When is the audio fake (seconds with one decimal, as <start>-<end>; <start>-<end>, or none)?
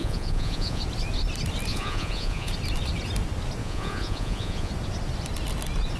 0.0-0.8; 1.7-2.5; 3.6-4.7